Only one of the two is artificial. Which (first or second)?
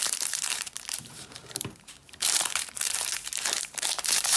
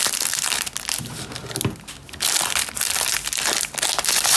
first